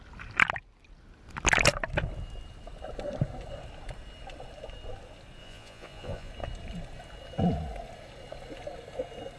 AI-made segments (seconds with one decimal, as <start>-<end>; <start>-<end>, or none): 5.4-6.3